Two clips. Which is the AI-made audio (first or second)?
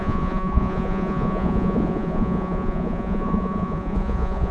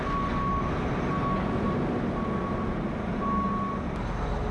first